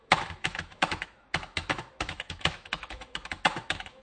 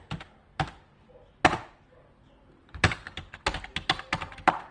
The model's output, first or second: first